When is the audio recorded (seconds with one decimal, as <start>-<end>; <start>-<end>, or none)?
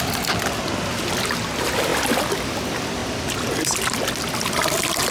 0.0-5.1